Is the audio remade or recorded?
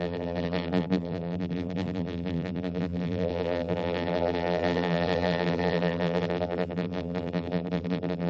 remade